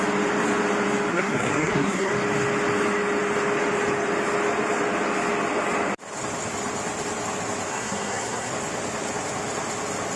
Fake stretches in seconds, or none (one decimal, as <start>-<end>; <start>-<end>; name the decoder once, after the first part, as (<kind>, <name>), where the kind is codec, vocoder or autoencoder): 1.1-2.1 (codec, SNAC); 7.7-8.5